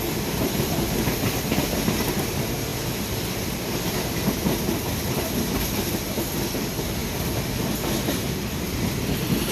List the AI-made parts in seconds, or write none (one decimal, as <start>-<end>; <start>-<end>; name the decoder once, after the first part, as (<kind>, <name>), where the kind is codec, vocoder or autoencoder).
none

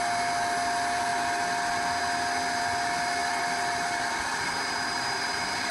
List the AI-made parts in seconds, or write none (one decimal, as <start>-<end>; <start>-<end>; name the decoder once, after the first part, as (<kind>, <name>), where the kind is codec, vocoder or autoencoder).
3.2-5.3 (vocoder, BigVGAN v2)

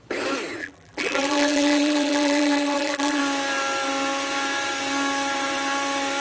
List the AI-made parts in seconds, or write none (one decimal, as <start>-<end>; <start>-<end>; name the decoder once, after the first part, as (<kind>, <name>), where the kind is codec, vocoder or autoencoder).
0.6-3.2 (vocoder, BigVGAN v2)

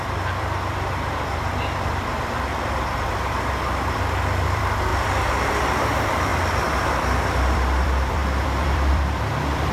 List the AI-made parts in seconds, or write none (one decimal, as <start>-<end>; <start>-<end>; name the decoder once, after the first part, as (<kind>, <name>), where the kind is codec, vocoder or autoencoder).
0.0-9.7 (vocoder, BigVGAN v2)